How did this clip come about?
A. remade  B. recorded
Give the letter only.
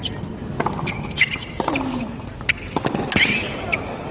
B